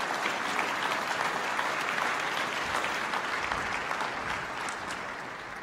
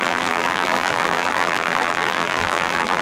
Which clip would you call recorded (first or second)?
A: first